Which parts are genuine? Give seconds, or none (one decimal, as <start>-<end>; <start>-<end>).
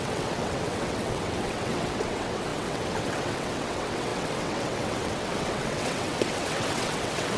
none